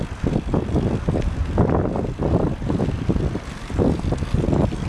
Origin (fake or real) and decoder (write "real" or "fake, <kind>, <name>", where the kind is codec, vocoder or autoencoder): real